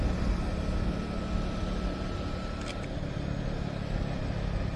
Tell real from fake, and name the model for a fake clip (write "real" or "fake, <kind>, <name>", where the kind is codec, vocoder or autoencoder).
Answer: real